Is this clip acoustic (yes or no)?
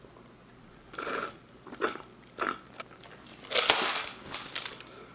yes